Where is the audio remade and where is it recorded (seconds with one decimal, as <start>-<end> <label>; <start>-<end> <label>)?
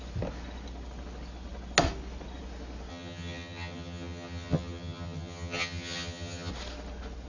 0.0-2.9 recorded; 2.9-6.5 remade; 6.5-7.3 recorded